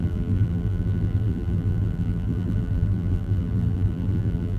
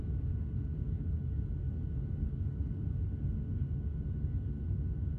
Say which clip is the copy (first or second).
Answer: first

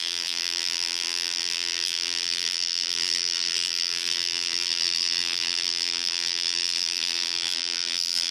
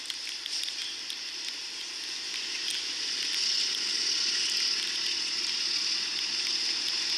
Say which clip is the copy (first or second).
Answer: first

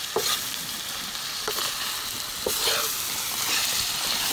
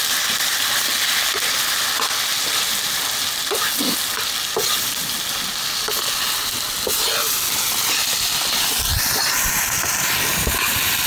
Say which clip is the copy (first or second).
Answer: first